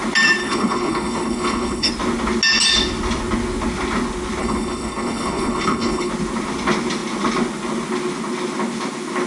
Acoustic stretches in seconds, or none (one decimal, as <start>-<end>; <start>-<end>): 0.0-0.4; 1.9-4.4; 6.1-9.3